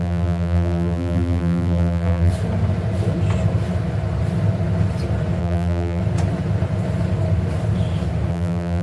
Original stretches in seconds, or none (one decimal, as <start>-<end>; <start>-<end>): 2.3-5.4; 6.0-8.3